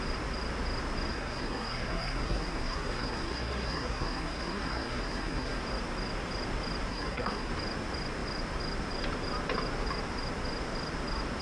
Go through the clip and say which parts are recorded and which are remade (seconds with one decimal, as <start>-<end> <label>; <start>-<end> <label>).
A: 0.0-1.1 recorded; 1.1-5.6 remade; 5.6-6.9 recorded; 6.9-7.5 remade; 7.5-11.4 recorded